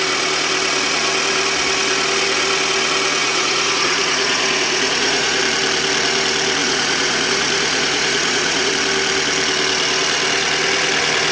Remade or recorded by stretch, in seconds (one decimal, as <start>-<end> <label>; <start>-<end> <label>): 0.0-3.2 recorded; 3.2-5.4 remade; 5.4-6.6 recorded; 6.6-8.7 remade; 8.7-11.3 recorded